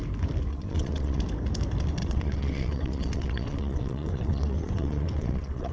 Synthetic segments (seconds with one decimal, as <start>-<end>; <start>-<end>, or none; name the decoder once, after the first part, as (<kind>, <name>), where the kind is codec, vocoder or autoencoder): 0.5-1.2 (vocoder, WaveNeXt); 2.0-5.7